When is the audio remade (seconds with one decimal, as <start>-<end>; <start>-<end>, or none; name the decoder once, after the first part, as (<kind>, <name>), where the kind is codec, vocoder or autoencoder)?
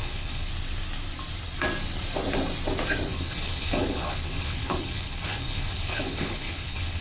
0.0-0.5 (codec, HILCodec); 3.1-7.0